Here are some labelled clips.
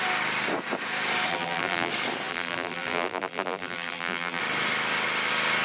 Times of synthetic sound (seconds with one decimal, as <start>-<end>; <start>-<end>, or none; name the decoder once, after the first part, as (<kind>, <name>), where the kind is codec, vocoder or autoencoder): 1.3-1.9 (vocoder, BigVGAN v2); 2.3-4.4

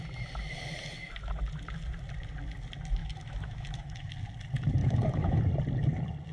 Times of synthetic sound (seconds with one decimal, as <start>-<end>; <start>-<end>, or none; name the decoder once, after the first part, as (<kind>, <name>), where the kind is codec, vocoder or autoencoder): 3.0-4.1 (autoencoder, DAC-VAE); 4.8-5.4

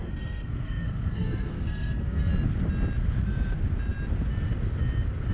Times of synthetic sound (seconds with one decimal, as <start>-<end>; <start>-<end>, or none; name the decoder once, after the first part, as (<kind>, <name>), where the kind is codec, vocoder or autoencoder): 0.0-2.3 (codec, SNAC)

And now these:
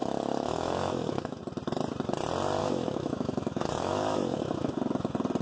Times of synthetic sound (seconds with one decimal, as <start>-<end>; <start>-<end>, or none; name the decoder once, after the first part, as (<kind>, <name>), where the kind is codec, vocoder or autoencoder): 0.0-1.4 (autoencoder, DAC-VAE); 2.6-4.7

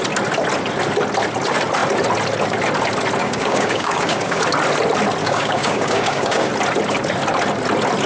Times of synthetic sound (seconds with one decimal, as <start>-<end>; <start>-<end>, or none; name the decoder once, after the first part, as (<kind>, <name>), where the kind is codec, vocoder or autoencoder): 3.2-4.4 (codec, DAC); 5.2-6.5